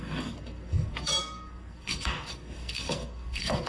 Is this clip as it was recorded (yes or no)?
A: no